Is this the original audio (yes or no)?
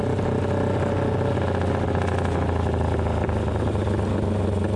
yes